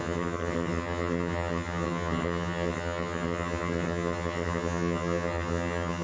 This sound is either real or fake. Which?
fake